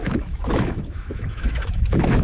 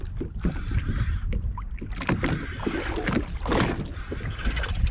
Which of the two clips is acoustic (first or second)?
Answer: second